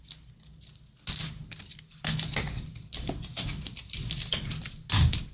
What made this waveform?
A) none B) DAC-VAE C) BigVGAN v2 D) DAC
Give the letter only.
A